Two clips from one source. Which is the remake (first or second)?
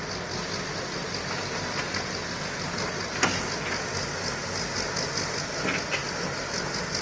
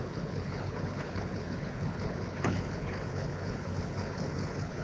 second